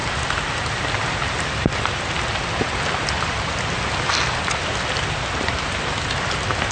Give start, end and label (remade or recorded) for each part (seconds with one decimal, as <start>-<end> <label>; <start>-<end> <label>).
0.0-6.7 recorded